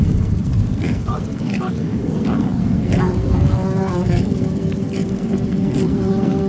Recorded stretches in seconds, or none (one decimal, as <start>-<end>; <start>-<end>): none